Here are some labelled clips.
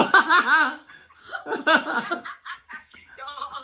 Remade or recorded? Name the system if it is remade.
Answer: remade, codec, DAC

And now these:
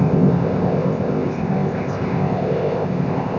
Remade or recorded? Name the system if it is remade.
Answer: remade, codec, ZipCodec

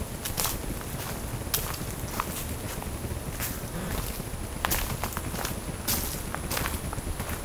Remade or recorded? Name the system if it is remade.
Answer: recorded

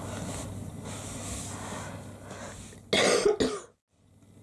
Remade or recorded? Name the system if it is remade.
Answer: recorded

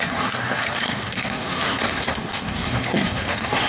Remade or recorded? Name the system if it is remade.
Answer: remade, codec, SNAC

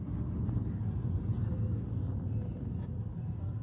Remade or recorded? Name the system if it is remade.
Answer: recorded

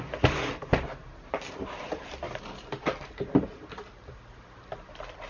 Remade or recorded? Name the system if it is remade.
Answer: recorded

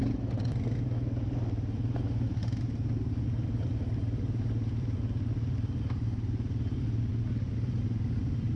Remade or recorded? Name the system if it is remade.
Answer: recorded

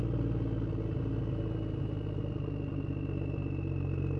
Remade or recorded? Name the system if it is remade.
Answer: recorded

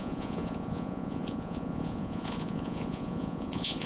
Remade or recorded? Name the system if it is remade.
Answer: remade, vocoder, Vocos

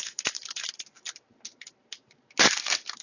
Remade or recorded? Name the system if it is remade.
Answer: recorded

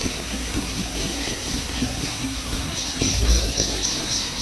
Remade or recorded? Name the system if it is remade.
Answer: remade, codec, SNAC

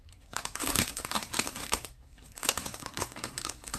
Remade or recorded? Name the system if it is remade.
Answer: remade, codec, SNAC